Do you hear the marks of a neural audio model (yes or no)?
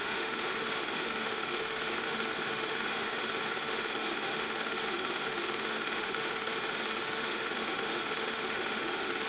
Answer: yes